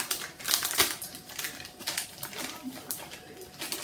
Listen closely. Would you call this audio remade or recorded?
recorded